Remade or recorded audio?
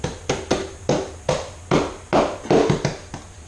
recorded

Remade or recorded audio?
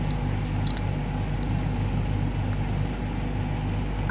recorded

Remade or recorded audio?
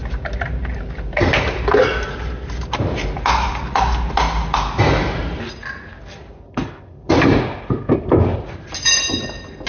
recorded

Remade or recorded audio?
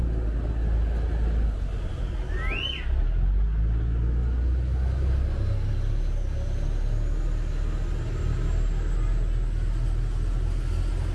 recorded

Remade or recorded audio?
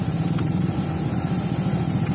remade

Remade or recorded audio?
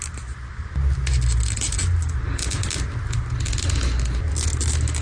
recorded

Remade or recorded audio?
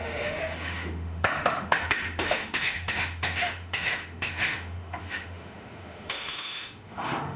remade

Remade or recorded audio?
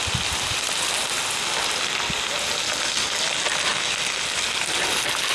recorded